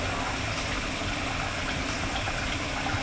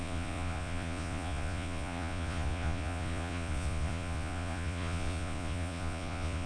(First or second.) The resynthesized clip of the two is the second